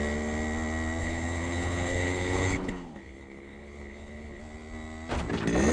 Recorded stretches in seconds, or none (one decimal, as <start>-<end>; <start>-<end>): 0.0-1.0; 4.4-5.7